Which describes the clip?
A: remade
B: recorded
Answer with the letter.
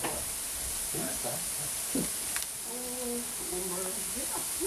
B